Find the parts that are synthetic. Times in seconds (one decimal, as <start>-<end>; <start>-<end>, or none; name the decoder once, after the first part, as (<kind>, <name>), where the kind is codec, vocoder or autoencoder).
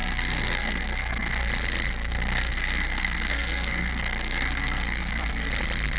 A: 0.0-1.5 (codec, SNAC); 1.9-5.5